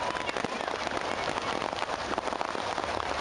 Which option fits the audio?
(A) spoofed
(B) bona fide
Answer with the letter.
B